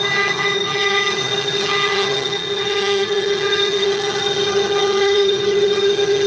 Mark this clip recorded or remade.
remade